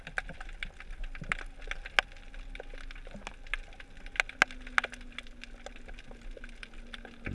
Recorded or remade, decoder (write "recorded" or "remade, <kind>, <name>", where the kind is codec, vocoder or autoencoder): recorded